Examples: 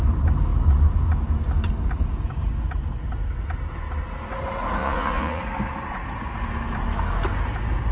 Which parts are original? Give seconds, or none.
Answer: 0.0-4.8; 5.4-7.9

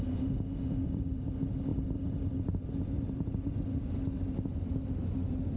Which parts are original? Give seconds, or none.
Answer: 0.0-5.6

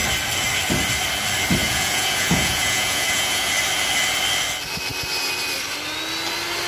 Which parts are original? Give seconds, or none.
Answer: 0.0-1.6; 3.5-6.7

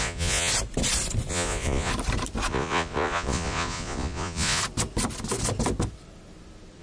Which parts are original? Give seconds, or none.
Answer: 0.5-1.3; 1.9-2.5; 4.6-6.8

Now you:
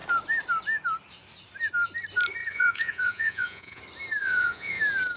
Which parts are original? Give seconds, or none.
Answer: 0.0-2.4; 3.8-4.2; 4.8-5.2